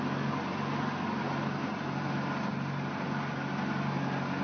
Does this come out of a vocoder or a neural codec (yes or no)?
no